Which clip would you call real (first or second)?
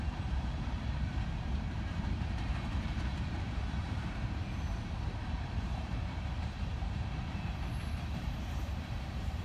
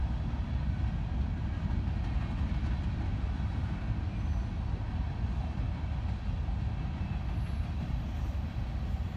second